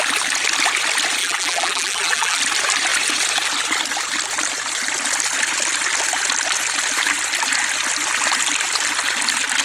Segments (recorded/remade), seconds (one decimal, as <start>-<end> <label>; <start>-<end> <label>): 0.0-1.2 recorded; 1.2-2.4 remade; 2.4-9.6 recorded